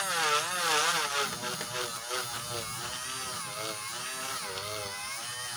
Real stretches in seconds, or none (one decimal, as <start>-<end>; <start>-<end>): 0.0-5.6